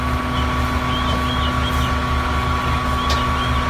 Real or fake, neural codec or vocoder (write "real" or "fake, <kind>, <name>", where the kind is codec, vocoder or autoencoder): real